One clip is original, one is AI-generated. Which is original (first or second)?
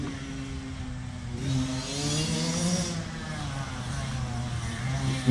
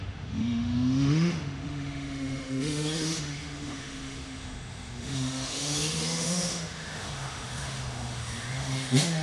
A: first